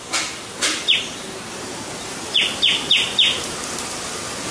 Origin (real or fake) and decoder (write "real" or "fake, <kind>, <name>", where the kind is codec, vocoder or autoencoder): real